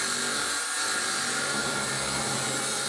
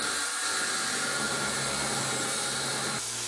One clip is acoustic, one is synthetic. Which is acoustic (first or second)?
first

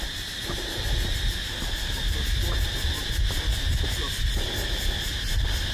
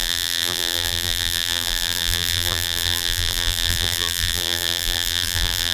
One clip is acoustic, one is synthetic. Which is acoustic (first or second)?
first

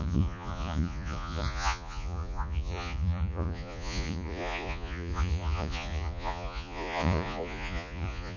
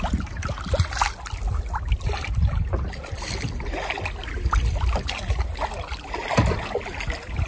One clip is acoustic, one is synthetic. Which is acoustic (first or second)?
second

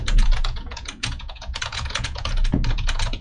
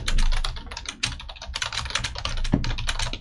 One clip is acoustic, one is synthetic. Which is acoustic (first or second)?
second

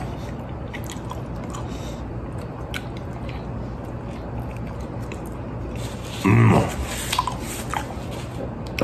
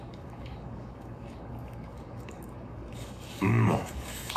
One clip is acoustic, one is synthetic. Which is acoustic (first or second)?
first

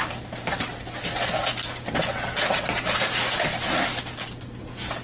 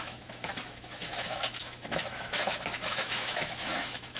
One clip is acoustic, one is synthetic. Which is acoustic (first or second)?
first